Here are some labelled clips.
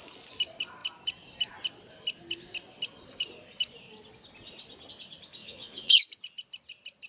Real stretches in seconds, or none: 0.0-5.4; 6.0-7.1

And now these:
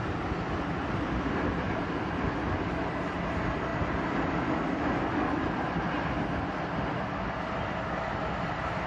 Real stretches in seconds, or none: 0.0-8.9

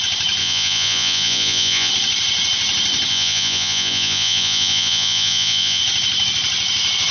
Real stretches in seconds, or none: 0.0-0.4; 1.9-3.1; 5.8-7.1

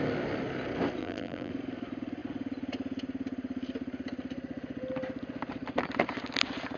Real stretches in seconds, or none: 0.0-1.0; 1.5-6.8

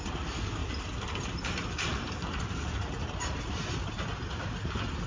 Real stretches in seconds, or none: 0.0-0.6; 3.7-5.1